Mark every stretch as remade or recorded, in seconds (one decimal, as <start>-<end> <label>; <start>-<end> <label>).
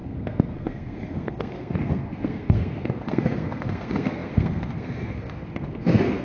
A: 0.0-6.2 remade